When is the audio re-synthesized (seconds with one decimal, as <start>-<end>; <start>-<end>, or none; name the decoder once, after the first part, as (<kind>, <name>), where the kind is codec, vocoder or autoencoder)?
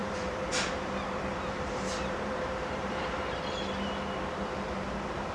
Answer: 0.0-3.2 (vocoder, BigVGAN v2)